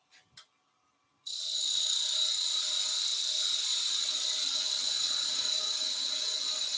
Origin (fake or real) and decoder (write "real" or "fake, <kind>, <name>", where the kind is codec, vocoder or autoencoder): real